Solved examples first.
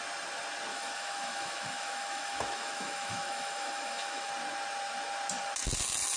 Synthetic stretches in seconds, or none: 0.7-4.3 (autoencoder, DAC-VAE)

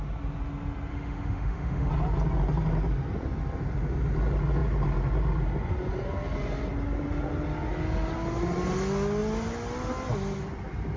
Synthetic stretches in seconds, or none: 0.9-1.9 (autoencoder, DAC-VAE)

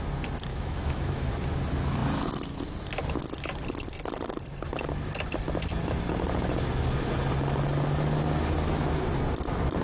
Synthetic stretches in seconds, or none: 0.5-1.3 (autoencoder, DAC-VAE)

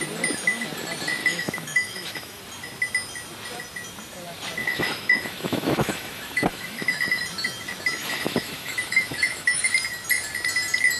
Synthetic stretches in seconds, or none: 1.2-2.4 (autoencoder, DAC-VAE); 4.6-7.2; 8.0-9.7

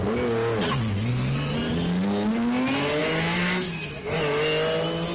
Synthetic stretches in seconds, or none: 3.0-4.4 (autoencoder, DAC-VAE)